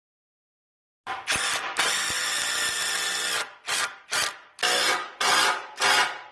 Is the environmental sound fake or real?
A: real